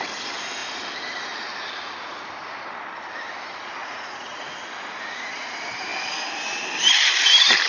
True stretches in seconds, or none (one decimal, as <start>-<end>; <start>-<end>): 0.0-3.8; 4.6-7.7